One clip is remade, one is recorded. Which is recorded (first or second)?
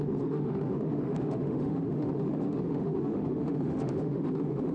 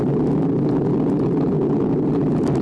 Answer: second